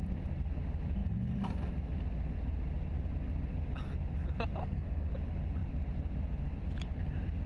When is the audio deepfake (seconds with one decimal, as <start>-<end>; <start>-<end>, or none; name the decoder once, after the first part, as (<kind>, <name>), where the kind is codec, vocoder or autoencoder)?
4.6-5.1 (codec, SNAC)